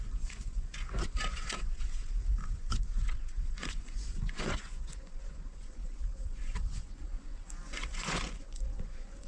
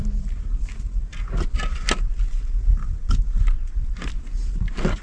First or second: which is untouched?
second